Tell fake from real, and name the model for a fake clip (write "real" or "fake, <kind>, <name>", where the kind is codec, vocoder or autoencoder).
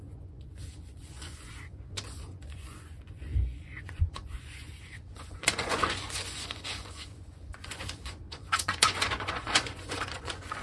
fake, vocoder, Vocos